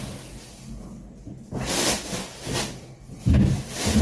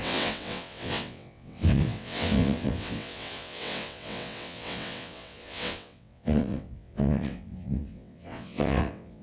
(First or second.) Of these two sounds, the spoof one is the second